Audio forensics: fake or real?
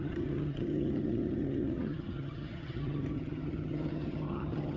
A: fake